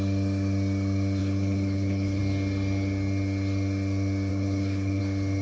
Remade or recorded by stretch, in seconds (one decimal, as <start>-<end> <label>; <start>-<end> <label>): 0.0-1.2 recorded; 1.2-2.2 remade; 2.2-4.3 recorded; 4.3-5.0 remade; 5.0-5.4 recorded